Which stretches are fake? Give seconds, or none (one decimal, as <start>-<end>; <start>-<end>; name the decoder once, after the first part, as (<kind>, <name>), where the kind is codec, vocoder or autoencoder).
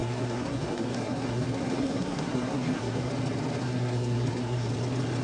0.0-3.1 (codec, SNAC); 3.6-4.7